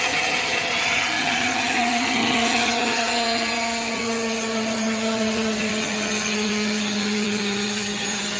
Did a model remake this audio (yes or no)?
yes